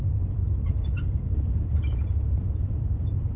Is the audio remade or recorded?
remade